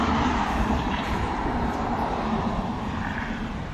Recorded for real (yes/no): no